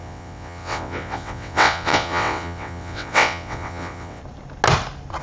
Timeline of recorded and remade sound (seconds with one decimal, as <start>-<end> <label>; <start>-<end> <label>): 0.0-4.2 remade; 4.2-5.2 recorded